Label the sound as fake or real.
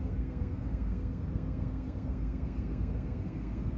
fake